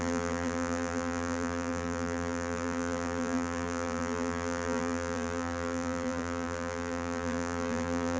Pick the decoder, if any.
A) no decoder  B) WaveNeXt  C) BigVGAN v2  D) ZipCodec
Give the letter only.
C